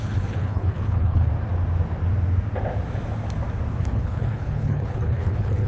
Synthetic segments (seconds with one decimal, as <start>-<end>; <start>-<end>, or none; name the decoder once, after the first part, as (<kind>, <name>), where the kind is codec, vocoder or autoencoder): 0.0-1.3 (codec, HILCodec); 3.8-5.7